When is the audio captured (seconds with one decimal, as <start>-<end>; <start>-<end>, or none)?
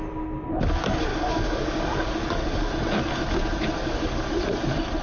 0.0-1.1; 2.7-3.8; 4.3-5.0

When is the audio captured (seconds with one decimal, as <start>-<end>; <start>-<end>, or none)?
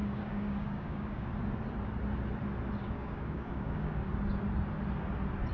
1.3-2.8; 4.1-5.5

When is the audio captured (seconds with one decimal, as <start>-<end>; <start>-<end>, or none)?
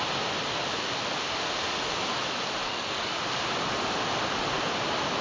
0.0-2.6; 3.2-5.2